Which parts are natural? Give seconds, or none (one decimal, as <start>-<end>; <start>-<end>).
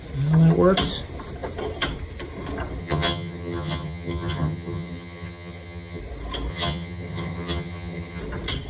0.0-2.8; 6.0-6.5; 8.2-8.7